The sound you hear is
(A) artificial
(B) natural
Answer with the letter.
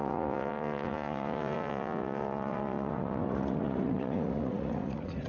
A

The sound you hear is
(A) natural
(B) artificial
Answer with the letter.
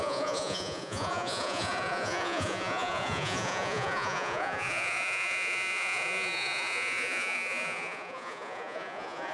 B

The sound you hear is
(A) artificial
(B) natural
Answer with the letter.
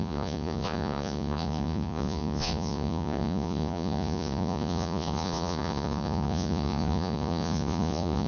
A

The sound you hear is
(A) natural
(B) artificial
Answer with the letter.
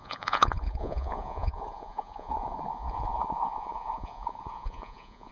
B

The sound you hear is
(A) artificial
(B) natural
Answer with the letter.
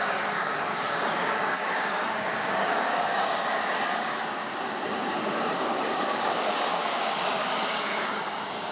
A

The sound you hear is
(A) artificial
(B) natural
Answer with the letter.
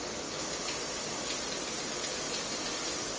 B